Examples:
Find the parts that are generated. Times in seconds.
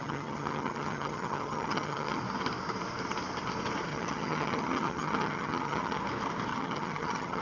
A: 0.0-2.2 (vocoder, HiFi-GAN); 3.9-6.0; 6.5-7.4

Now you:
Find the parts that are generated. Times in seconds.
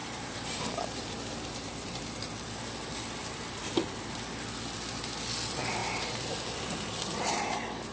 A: 0.0-2.0 (vocoder, BigVGAN v2); 5.8-6.9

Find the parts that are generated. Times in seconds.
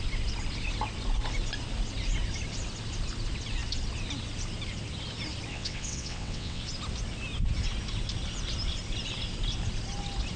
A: 5.5-6.6 (vocoder, WaveNeXt)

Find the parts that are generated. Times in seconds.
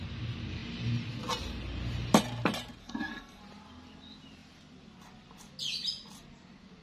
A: 2.8-3.4 (codec, SNAC)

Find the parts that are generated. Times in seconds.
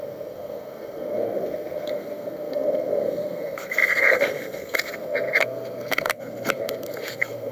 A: 0.0-7.5 (codec, SNAC)